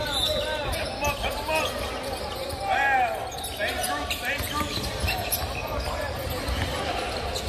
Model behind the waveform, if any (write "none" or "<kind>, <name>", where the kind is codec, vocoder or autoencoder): none